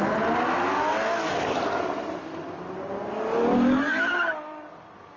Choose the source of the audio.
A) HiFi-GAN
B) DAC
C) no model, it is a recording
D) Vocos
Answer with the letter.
C